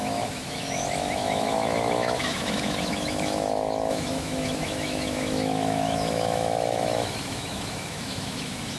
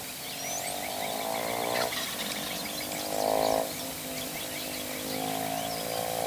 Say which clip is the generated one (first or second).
first